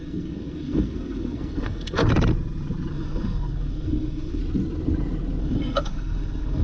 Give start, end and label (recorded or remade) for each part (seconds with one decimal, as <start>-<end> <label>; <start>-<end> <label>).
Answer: 0.0-2.0 remade; 2.0-2.9 recorded; 2.9-4.4 remade; 4.4-5.4 recorded; 5.4-6.6 remade